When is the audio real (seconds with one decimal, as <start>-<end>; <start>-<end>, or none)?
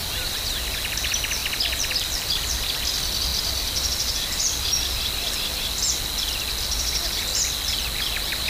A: 0.8-3.3; 5.8-8.5